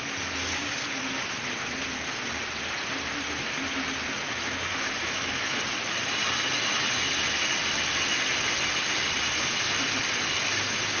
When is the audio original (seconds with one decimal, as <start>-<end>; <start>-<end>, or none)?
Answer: 0.0-4.7; 5.6-11.0